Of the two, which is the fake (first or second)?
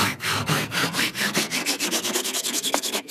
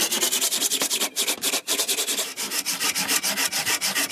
first